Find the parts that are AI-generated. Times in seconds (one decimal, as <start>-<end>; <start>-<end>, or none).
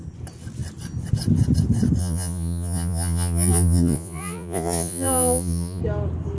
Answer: 2.0-5.8